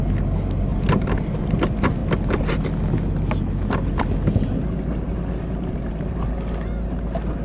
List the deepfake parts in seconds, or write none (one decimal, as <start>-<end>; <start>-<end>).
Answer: none